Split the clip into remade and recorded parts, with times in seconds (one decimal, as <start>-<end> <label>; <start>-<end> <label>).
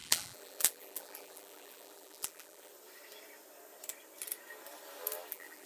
0.0-2.7 remade; 2.7-5.3 recorded; 5.3-5.7 remade